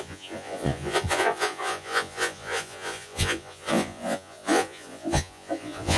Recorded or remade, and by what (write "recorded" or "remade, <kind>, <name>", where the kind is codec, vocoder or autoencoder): remade, vocoder, Vocos